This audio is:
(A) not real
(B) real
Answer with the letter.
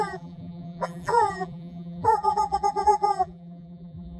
A